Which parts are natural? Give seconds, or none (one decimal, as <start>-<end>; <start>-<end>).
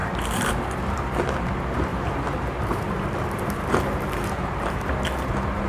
0.8-1.9; 4.9-5.7